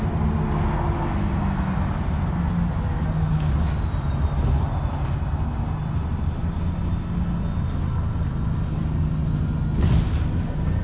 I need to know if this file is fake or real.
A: real